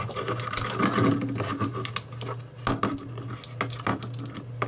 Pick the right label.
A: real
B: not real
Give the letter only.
A